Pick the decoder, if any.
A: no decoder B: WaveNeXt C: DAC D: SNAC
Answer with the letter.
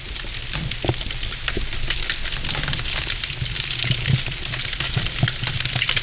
A